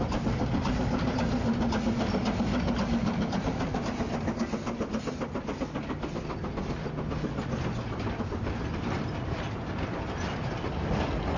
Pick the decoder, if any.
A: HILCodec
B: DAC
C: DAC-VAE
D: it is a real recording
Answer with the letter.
D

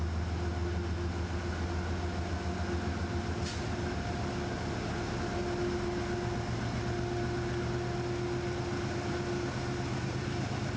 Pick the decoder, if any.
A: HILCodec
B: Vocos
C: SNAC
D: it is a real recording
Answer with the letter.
D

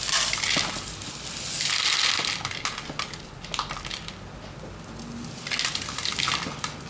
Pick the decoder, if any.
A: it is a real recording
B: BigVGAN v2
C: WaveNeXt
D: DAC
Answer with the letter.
A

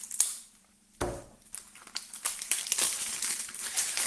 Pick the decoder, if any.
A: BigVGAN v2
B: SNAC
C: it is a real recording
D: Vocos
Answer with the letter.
A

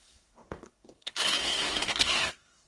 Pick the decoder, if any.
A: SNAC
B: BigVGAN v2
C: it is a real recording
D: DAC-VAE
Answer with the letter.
A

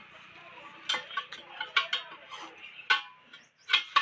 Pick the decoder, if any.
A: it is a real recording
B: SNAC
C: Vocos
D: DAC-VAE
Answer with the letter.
A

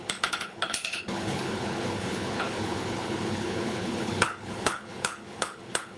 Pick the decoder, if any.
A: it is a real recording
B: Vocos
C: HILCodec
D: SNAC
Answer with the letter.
C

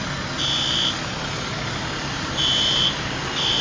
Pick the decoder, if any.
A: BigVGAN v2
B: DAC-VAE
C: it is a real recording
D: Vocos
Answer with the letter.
C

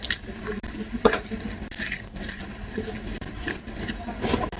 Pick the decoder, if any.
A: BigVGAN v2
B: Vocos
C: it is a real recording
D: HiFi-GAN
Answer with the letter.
C